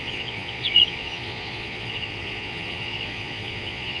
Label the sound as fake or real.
fake